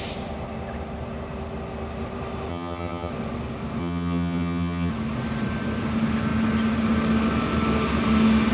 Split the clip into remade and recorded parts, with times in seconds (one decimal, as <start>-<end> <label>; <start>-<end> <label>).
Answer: 0.0-2.5 recorded; 2.5-3.1 remade; 3.1-3.8 recorded; 3.8-4.9 remade; 4.9-8.5 recorded